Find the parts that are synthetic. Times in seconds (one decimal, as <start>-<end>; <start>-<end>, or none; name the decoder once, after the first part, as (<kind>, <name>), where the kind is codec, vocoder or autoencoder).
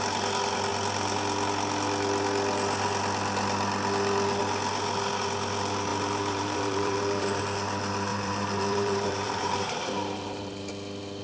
5.9-7.4 (vocoder, BigVGAN v2); 8.1-10.7